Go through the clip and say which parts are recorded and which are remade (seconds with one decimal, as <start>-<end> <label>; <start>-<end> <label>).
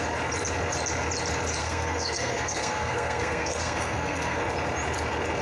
0.0-1.6 recorded; 1.6-4.4 remade; 4.4-5.4 recorded